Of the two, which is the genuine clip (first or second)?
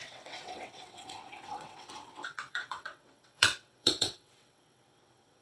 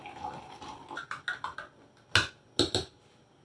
second